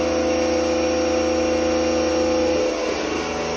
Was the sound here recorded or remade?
recorded